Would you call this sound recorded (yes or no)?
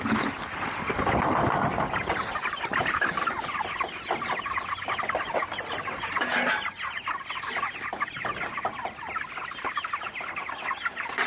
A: yes